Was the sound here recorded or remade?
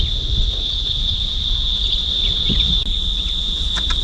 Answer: recorded